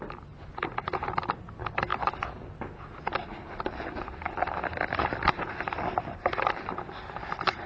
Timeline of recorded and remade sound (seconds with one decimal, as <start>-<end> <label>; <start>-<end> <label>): 0.0-7.7 recorded